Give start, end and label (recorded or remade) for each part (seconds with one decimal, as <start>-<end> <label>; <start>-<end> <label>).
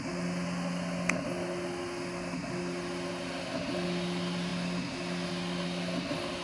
0.0-6.4 recorded